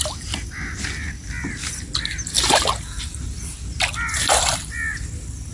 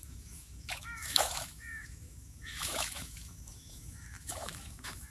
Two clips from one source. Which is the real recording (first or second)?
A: first